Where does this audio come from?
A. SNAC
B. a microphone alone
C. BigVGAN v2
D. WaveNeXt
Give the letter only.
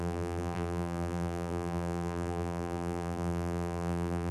C